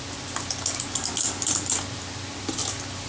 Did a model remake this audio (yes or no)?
no